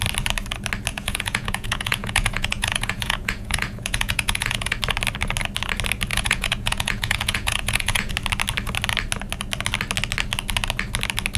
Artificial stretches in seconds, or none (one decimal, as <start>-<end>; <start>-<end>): 0.9-4.8; 6.1-8.1